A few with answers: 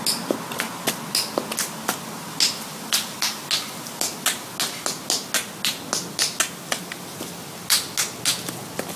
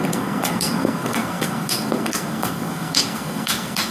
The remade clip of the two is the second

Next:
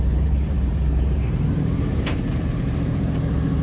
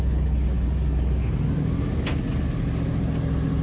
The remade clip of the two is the first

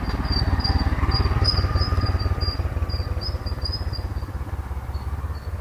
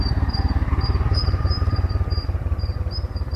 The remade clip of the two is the second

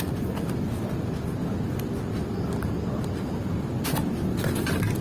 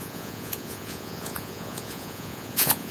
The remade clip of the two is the second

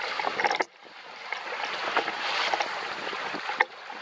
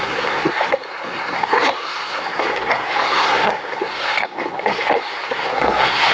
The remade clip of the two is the second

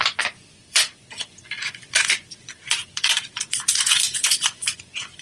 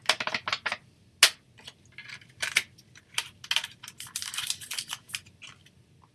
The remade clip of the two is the first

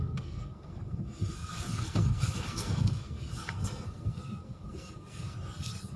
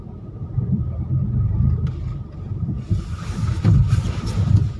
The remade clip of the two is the first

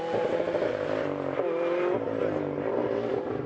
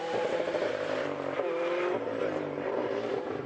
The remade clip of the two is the second